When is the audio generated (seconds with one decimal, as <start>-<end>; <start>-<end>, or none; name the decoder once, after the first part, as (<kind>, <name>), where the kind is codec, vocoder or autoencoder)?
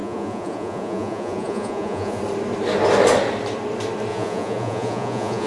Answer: 0.0-2.2 (vocoder, Vocos); 4.1-5.5